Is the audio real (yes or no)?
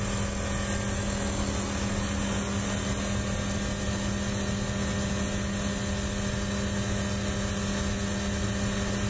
yes